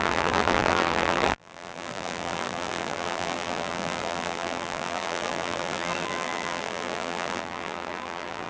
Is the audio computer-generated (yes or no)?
yes